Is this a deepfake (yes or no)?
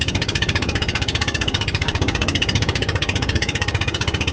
yes